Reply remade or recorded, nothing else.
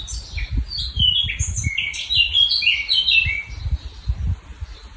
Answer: recorded